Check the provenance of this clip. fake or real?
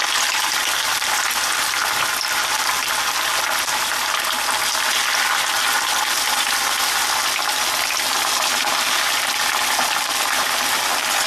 real